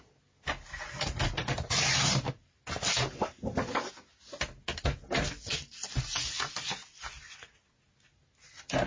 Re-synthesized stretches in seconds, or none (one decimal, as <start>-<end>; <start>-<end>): 1.4-2.6